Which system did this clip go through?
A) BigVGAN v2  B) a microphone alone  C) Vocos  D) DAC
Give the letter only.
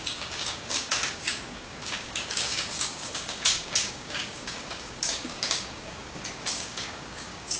D